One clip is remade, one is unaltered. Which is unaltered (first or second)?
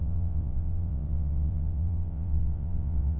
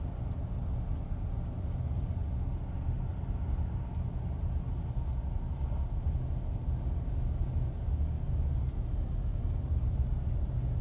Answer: second